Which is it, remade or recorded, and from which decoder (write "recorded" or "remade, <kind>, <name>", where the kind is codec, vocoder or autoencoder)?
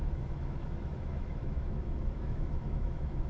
remade, autoencoder, DAC-VAE